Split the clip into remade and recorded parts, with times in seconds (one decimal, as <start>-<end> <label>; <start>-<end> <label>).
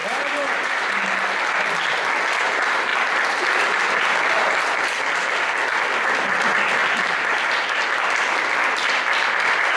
0.0-1.0 remade; 1.0-6.8 recorded; 6.8-7.8 remade; 7.8-9.8 recorded